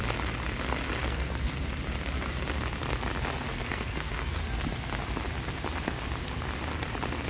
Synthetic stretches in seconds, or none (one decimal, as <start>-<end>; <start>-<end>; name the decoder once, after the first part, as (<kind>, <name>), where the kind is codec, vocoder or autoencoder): 1.0-1.6 (codec, SNAC); 3.5-4.4

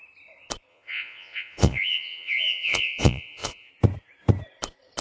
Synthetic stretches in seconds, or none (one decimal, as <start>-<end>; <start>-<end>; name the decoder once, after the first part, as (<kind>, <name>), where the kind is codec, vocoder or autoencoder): 0.7-3.7 (vocoder, Vocos)

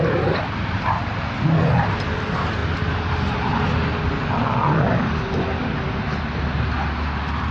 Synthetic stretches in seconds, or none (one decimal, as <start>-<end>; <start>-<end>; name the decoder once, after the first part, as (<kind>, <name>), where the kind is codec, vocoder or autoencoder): none

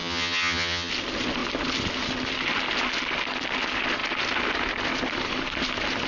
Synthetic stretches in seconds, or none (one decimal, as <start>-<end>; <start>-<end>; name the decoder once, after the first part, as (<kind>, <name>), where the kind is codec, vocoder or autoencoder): 0.0-0.9 (vocoder, HiFi-GAN)